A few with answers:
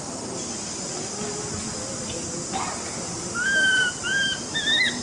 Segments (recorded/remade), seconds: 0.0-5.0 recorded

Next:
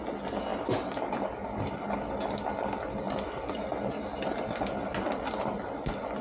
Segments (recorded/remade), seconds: 0.0-6.2 recorded

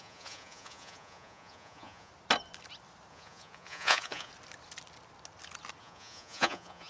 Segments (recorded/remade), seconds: 0.0-2.1 remade; 2.1-3.1 recorded; 3.1-4.3 remade; 4.3-5.8 recorded; 5.8-6.9 remade

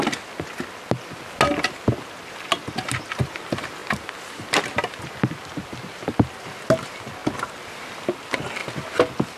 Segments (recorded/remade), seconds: 0.0-9.4 recorded

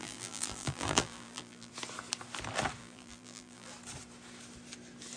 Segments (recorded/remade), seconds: 0.0-1.7 remade; 1.7-2.8 recorded; 2.8-3.7 remade; 3.7-5.2 recorded

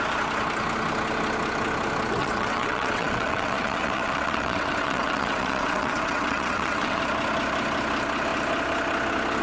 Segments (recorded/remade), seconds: 0.0-2.2 recorded; 2.2-7.0 remade; 7.0-9.4 recorded